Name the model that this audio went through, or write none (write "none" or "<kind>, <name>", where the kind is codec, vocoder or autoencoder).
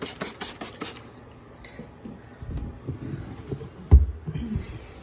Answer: none